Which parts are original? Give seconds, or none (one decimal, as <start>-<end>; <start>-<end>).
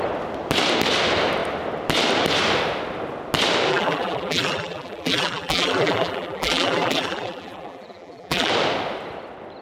0.0-3.7; 8.5-9.6